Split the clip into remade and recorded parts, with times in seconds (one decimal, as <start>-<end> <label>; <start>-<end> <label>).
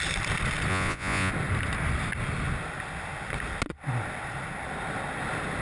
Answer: 0.0-0.7 recorded; 0.7-1.3 remade; 1.3-5.6 recorded